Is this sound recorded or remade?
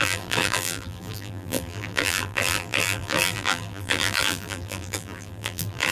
remade